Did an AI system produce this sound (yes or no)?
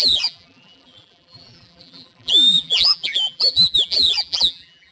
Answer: yes